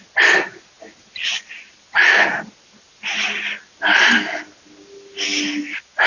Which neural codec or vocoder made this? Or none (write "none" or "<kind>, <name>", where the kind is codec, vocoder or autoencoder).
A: none